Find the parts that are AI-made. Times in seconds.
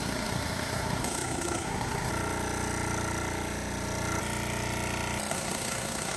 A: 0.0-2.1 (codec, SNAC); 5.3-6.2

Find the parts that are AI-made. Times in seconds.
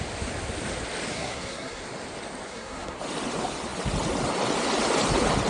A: 1.1-1.8 (codec, SNAC); 2.5-3.0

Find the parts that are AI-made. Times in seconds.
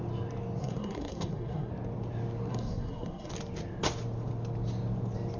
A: 0.6-1.7 (codec, SNAC); 2.5-3.3